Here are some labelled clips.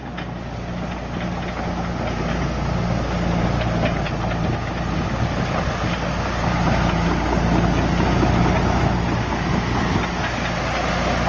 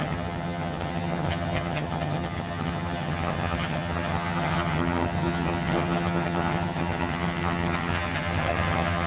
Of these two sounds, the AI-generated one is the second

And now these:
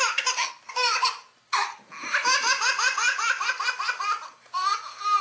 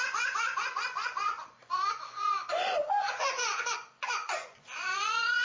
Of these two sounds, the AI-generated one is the second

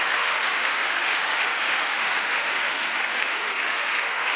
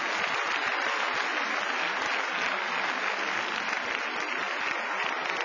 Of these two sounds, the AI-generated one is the first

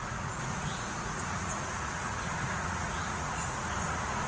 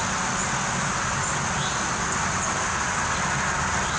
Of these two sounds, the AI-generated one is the first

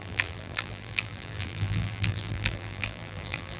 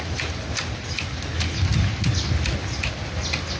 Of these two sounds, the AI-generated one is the first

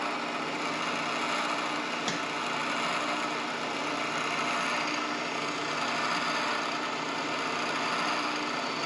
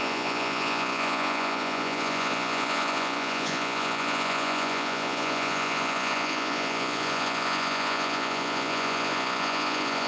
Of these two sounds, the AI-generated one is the second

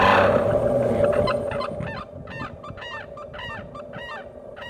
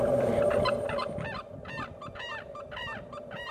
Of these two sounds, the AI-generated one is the second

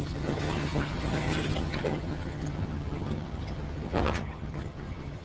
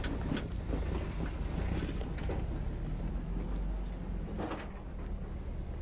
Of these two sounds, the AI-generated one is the first